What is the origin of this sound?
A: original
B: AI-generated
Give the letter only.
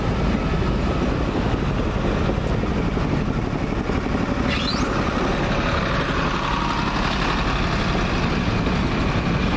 A